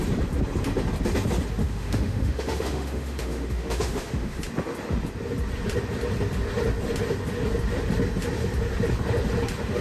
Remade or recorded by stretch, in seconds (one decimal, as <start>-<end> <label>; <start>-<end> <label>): 0.0-1.6 recorded; 1.6-4.4 remade; 4.4-9.8 recorded